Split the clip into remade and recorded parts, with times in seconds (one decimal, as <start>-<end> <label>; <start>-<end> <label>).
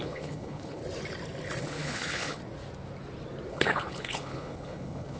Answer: 0.0-0.8 remade; 0.8-1.6 recorded; 1.6-2.4 remade; 2.4-3.5 recorded; 3.5-5.2 remade